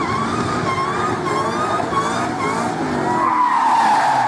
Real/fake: real